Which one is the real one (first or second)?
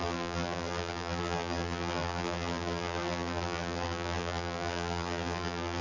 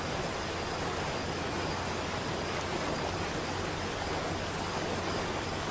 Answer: second